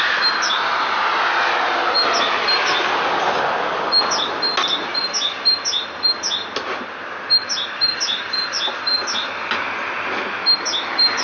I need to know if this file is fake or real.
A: real